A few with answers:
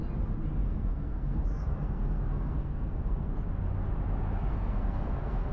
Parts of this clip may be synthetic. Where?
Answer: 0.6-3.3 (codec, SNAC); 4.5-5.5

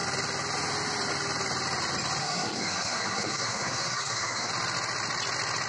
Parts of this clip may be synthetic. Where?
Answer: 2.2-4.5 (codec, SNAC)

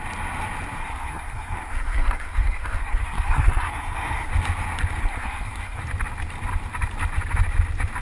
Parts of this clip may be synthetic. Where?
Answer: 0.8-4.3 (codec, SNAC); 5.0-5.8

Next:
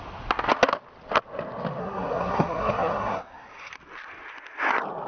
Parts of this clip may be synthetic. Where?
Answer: 1.8-3.7 (codec, SNAC)

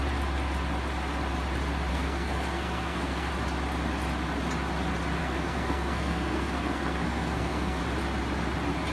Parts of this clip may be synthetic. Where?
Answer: 1.9-3.3 (codec, SNAC); 5.2-7.8

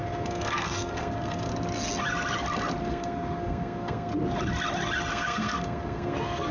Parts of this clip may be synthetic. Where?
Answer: 0.0-1.5 (codec, SNAC); 2.8-4.1; 5.1-6.5

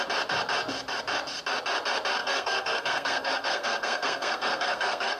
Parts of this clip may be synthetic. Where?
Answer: 2.2-5.2 (codec, SNAC)